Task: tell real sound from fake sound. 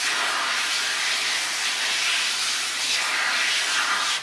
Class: real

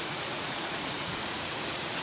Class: fake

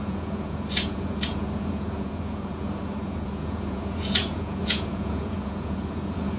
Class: fake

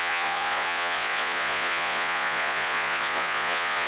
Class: fake